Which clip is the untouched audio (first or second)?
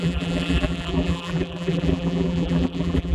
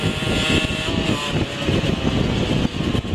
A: second